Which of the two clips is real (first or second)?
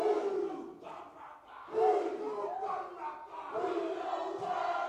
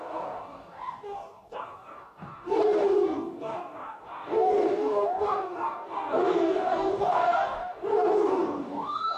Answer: first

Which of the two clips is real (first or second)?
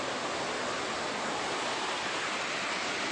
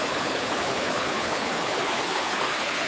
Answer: first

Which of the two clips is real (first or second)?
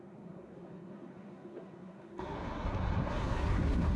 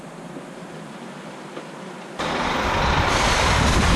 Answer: second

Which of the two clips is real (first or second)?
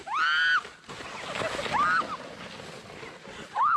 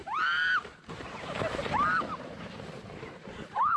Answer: first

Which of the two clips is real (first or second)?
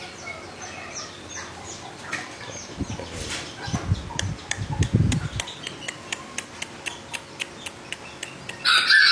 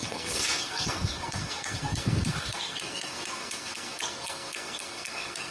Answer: first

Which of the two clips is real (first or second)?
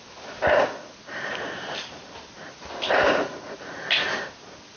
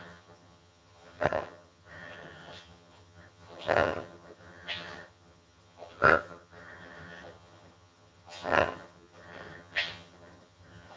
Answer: first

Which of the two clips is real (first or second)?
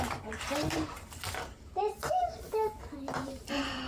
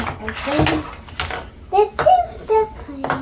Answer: second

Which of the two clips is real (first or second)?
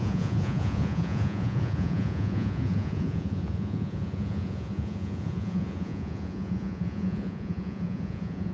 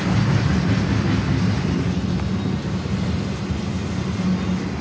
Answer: second